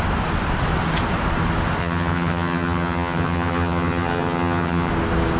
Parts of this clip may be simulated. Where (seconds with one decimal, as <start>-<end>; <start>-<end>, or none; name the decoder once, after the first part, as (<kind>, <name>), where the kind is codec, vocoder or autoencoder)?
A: 1.8-4.9 (vocoder, HiFi-GAN)